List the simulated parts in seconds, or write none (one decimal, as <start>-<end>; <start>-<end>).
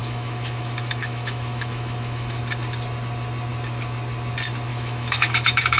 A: 0.0-2.4; 4.7-5.8